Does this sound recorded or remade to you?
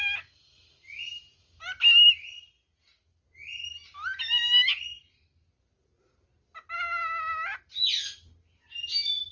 recorded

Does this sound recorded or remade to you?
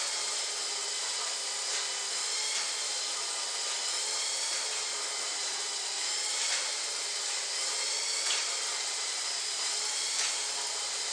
recorded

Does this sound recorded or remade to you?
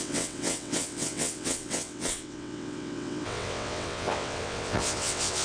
remade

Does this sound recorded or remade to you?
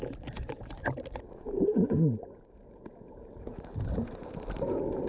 remade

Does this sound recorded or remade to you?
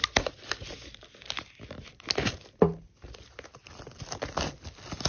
recorded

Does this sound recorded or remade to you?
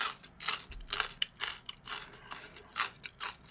recorded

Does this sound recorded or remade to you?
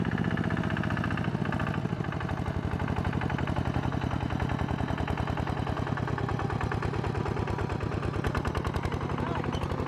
recorded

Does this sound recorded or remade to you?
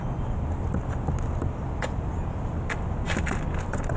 recorded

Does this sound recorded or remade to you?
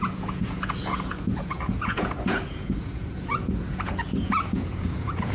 remade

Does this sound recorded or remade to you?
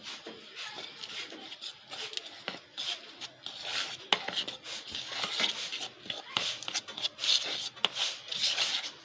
recorded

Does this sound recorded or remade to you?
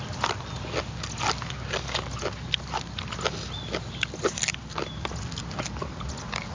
recorded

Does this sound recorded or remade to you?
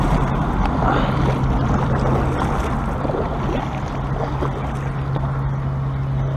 recorded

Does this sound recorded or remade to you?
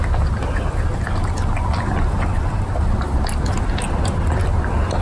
recorded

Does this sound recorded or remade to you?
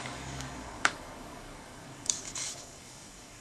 remade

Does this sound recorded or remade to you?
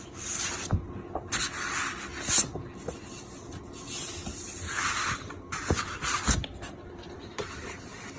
recorded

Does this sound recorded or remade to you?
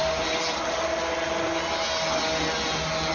recorded